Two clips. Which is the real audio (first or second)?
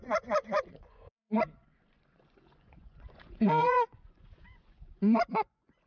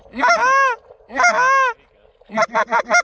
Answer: second